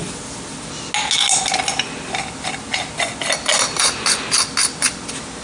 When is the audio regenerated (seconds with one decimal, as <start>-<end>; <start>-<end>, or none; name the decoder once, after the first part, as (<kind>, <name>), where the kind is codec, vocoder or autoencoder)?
none